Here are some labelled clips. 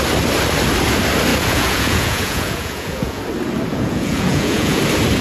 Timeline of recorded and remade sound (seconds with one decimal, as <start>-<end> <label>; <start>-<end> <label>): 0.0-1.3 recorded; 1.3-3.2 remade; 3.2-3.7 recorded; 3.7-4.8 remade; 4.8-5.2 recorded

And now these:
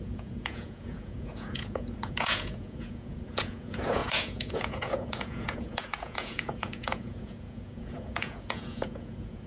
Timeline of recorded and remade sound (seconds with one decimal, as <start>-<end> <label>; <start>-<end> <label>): 0.0-9.5 remade

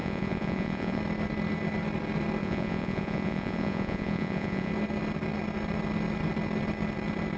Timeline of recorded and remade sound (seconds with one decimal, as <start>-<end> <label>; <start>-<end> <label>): 0.0-1.0 remade; 1.0-2.4 recorded; 2.4-4.7 remade; 4.7-7.4 recorded

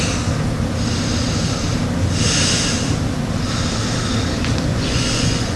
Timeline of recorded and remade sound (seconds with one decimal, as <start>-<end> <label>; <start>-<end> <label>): 0.0-4.7 recorded; 4.7-5.6 remade

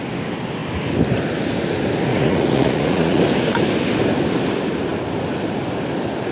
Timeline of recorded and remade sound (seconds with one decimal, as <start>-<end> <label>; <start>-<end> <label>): 0.0-2.1 recorded; 2.1-3.2 remade; 3.2-6.3 recorded

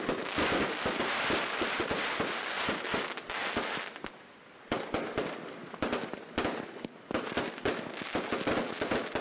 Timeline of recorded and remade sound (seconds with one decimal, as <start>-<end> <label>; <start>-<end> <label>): 0.0-9.2 recorded

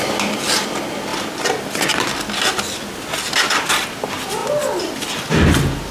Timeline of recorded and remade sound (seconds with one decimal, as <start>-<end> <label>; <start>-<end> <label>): 0.0-5.9 recorded

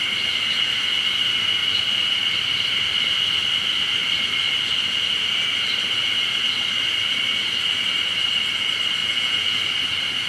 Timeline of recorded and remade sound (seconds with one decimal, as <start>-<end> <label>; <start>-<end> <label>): 0.0-9.0 recorded; 9.0-9.6 remade; 9.6-10.3 recorded